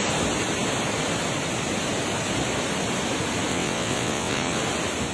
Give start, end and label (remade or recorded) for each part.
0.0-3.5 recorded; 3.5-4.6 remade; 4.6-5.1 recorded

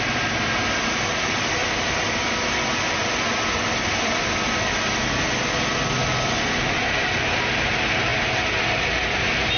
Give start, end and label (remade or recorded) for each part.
0.0-9.6 recorded

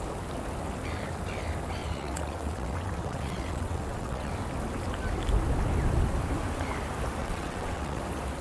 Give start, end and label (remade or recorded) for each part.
0.0-1.8 recorded; 1.8-4.3 remade; 4.3-7.2 recorded; 7.2-8.0 remade; 8.0-8.4 recorded

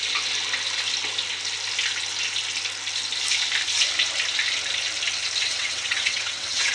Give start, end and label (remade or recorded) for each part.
0.0-5.4 recorded; 5.4-6.7 remade

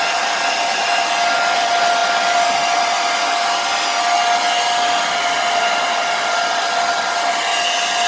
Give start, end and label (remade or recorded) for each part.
0.0-8.1 recorded

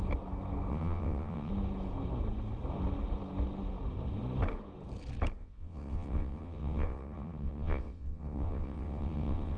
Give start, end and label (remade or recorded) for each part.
0.0-0.7 recorded; 0.7-1.5 remade; 1.5-5.4 recorded; 5.4-9.6 remade

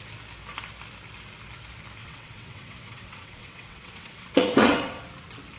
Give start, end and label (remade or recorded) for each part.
0.0-2.0 recorded; 2.0-5.0 remade; 5.0-5.6 recorded

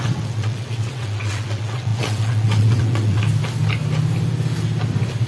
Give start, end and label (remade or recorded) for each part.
0.0-3.2 remade; 3.2-5.3 recorded